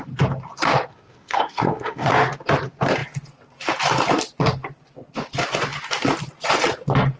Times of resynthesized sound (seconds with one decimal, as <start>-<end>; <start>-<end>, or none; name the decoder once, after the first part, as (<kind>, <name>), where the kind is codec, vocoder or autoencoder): 0.9-2.1 (codec, SNAC)